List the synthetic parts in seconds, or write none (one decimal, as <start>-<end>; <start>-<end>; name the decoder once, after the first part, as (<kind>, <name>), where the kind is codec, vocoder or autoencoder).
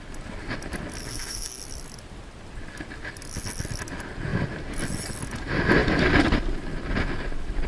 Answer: 1.0-1.6 (codec, SNAC)